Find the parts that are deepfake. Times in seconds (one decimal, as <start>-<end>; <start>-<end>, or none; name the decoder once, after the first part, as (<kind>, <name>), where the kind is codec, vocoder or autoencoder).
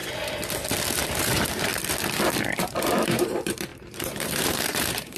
1.0-1.7 (vocoder, BigVGAN v2); 2.5-5.2